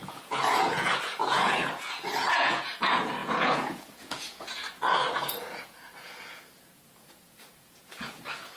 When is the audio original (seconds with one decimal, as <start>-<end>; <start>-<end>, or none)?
4.6-5.1